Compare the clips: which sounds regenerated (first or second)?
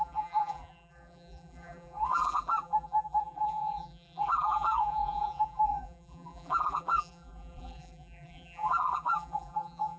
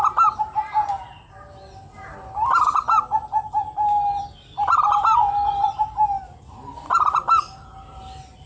first